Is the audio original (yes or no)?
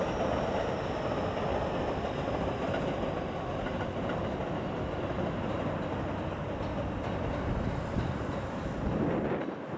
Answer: yes